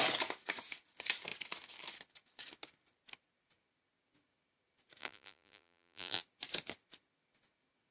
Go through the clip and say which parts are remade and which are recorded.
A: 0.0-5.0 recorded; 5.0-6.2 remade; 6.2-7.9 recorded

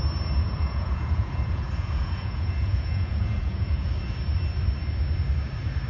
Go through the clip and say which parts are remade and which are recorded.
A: 0.0-0.4 recorded; 0.4-3.9 remade; 3.9-5.9 recorded